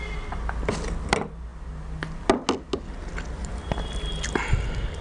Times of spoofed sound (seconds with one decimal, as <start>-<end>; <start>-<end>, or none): none